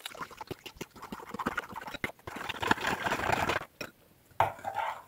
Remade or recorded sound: recorded